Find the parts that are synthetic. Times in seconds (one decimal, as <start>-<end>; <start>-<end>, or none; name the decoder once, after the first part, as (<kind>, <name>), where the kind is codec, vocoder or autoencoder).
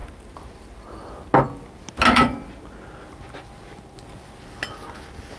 none